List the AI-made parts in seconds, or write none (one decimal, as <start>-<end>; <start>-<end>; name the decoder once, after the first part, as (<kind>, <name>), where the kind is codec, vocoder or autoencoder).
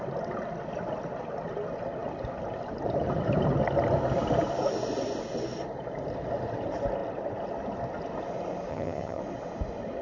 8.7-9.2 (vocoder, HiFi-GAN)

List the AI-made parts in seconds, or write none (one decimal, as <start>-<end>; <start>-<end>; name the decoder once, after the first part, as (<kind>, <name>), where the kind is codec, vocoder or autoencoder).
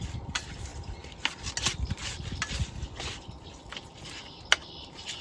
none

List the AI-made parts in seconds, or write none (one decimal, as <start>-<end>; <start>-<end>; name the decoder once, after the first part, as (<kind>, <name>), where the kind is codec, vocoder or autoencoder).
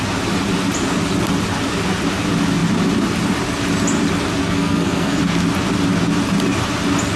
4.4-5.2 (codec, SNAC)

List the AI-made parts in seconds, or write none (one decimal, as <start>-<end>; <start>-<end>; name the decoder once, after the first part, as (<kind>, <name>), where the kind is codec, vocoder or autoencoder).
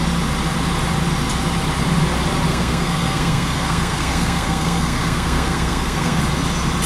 2.5-6.2 (codec, SNAC)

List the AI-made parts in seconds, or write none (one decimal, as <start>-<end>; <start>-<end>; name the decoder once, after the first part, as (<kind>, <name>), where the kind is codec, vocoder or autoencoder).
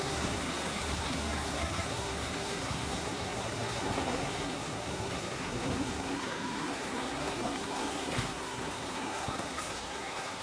0.0-10.4 (codec, SNAC)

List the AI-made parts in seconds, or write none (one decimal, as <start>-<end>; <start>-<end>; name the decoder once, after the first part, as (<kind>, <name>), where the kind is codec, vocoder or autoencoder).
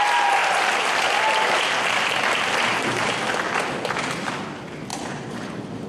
2.7-3.3 (vocoder, BigVGAN v2)